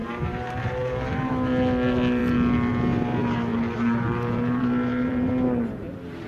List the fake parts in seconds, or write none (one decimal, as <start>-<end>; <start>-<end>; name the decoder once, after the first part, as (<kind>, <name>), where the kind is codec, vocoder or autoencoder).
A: 0.0-1.3 (vocoder, BigVGAN v2); 3.5-5.3